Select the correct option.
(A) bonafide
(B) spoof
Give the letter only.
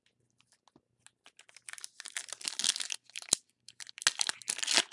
A